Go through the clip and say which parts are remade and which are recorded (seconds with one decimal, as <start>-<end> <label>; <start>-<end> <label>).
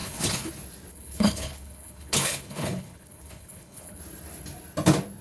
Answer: 0.0-0.5 remade; 0.5-0.9 recorded; 0.9-4.0 remade; 4.0-5.2 recorded